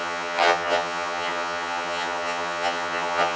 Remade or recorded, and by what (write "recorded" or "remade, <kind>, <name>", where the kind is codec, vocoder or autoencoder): remade, vocoder, HiFi-GAN